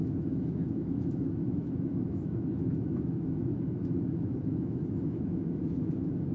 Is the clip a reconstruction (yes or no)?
yes